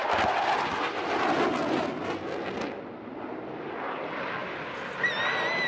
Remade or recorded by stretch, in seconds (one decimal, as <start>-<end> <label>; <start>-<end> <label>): 0.0-5.7 recorded